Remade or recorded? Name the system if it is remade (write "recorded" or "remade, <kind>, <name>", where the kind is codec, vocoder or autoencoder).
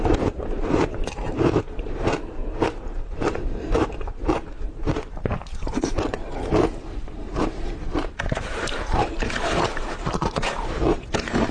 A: remade, vocoder, BigVGAN v2